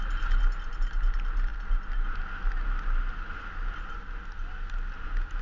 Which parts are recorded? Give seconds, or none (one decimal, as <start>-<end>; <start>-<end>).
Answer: 0.0-5.4